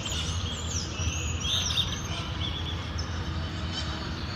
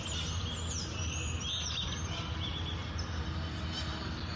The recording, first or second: second